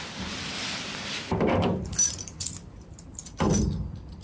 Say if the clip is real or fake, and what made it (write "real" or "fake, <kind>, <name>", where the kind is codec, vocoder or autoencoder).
fake, vocoder, BigVGAN v2